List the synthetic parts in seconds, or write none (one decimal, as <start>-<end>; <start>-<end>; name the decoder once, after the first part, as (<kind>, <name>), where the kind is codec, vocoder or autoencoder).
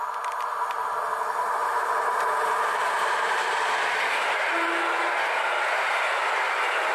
1.6-4.7 (vocoder, BigVGAN v2)